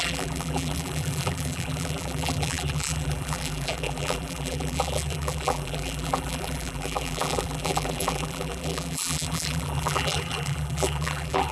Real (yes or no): no